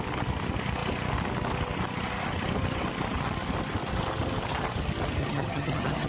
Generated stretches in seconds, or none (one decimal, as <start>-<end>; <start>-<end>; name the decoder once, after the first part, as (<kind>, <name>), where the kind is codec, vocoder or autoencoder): 5.2-6.1 (vocoder, HiFi-GAN)